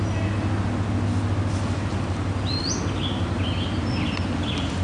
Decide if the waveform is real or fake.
real